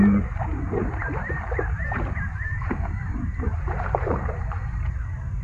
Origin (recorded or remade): remade